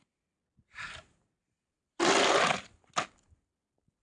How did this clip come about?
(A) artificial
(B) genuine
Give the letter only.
B